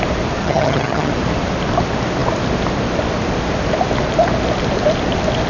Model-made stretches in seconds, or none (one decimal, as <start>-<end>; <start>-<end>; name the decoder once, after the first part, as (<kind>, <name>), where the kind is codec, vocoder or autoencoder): 0.4-1.1 (vocoder, HiFi-GAN)